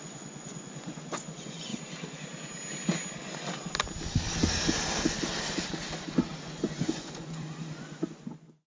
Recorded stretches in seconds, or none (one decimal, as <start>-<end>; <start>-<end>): 1.7-6.4